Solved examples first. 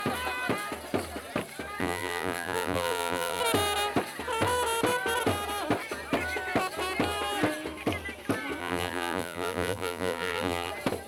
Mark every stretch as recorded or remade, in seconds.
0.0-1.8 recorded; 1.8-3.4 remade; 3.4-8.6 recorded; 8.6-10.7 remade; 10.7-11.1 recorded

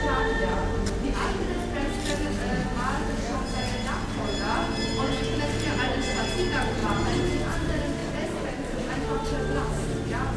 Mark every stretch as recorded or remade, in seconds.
0.0-6.8 recorded; 6.8-7.3 remade; 7.3-8.0 recorded; 8.0-10.4 remade

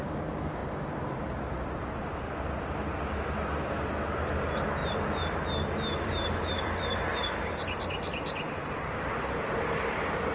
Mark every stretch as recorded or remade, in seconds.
0.0-0.6 recorded; 0.6-3.6 remade; 3.6-4.8 recorded; 4.8-9.3 remade; 9.3-10.3 recorded

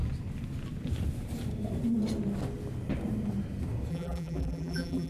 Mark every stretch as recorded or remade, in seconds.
0.0-3.9 recorded; 3.9-5.1 remade

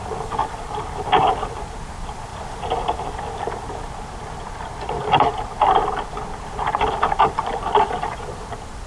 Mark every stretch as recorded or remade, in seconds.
0.0-0.4 recorded; 0.4-1.5 remade; 1.5-2.3 recorded; 2.3-6.7 remade; 6.7-8.9 recorded

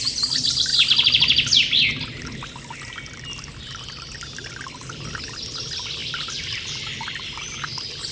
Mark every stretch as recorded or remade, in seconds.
0.0-6.0 recorded; 6.0-7.2 remade; 7.2-8.1 recorded